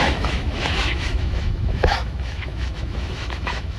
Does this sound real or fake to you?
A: fake